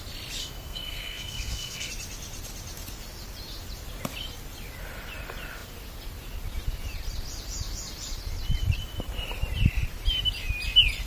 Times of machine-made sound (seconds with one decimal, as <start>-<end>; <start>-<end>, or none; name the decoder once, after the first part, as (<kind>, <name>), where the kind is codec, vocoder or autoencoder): 0.4-1.9 (codec, SNAC)